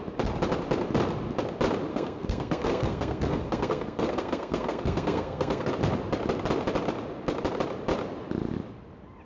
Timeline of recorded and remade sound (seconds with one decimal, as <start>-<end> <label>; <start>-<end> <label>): 0.0-1.9 recorded; 1.9-5.7 remade; 5.7-9.2 recorded